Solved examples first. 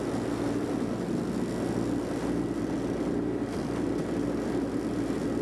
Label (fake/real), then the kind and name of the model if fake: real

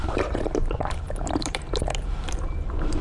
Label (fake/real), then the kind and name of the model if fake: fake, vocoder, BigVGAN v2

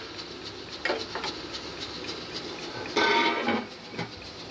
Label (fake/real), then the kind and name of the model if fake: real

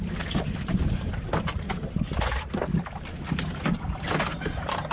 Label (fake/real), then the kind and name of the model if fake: real